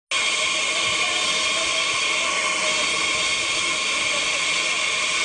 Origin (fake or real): real